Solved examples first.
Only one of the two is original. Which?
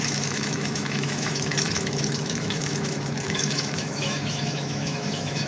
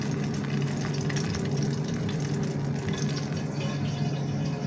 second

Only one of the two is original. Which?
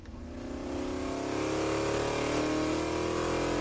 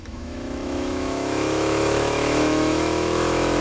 first